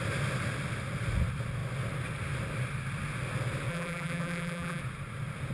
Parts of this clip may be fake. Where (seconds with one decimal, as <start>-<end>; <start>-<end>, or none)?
3.7-4.8